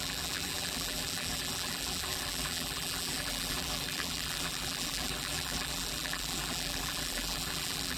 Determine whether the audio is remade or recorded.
remade